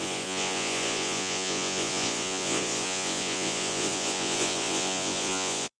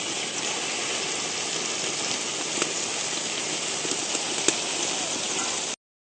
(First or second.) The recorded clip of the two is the second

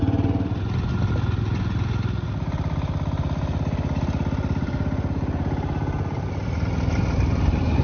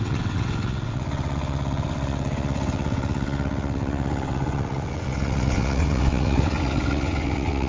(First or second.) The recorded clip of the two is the first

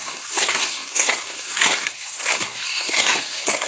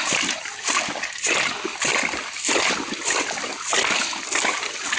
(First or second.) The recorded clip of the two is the second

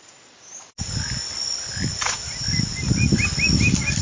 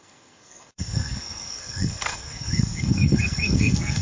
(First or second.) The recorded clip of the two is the first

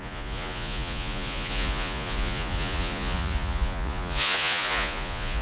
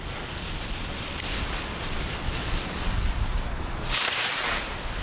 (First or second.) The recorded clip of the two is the second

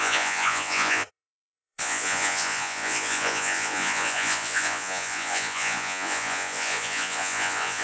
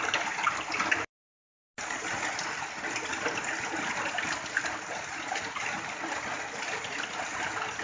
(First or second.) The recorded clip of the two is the second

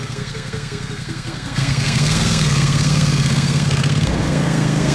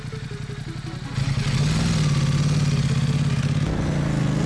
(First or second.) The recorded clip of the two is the second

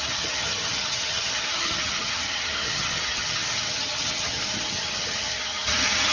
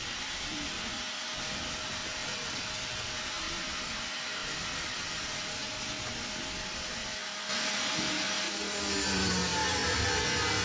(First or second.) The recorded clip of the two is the second